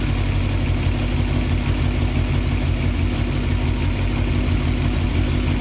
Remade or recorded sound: recorded